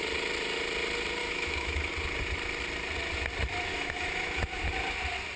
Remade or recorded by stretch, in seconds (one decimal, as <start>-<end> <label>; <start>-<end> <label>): 0.0-1.2 recorded; 1.2-1.9 remade; 1.9-3.7 recorded; 3.7-4.6 remade; 4.6-5.4 recorded